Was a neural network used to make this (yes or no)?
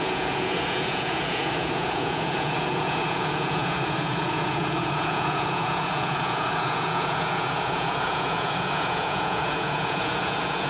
yes